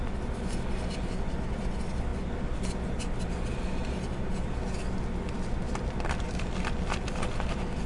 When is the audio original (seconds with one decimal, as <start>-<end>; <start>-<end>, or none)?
0.0-7.9